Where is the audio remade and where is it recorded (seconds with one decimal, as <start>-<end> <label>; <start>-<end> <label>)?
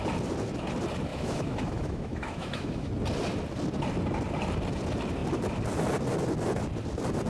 0.0-1.1 recorded; 1.1-2.9 remade; 2.9-7.3 recorded